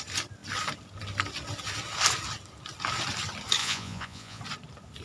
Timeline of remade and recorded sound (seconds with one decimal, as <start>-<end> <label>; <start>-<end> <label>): 0.0-3.6 recorded; 3.6-4.4 remade; 4.4-5.0 recorded